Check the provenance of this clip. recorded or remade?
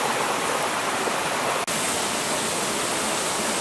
recorded